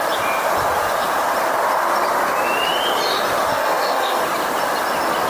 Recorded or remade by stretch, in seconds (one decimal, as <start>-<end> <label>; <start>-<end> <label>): 0.0-3.5 recorded; 3.5-4.2 remade; 4.2-5.3 recorded